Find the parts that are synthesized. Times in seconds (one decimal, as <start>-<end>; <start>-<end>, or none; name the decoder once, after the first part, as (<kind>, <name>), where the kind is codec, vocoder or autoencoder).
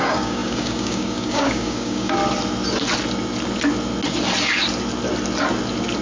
0.0-2.2 (codec, DAC)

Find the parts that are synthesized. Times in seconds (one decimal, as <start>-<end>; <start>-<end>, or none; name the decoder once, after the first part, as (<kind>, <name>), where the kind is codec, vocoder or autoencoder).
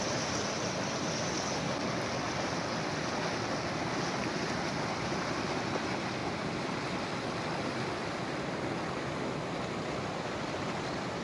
none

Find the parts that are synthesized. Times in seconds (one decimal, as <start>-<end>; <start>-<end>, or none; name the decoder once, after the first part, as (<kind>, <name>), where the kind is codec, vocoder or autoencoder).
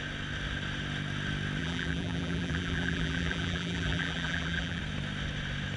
1.6-4.8 (vocoder, BigVGAN v2)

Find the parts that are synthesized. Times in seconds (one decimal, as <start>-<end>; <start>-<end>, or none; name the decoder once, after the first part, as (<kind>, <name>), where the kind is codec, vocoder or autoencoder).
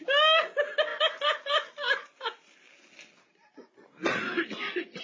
none